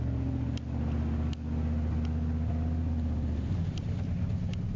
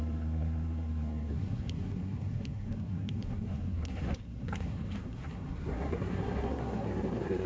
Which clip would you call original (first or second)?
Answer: first